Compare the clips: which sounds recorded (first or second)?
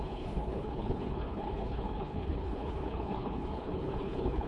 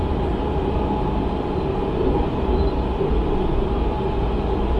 second